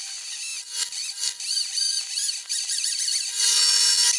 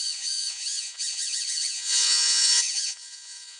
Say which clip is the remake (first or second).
second